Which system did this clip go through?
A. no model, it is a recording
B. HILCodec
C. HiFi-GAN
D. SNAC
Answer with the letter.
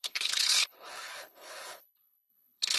B